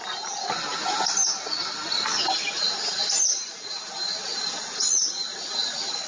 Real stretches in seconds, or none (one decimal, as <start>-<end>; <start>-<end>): 0.0-6.1